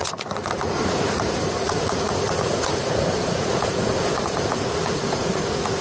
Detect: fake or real fake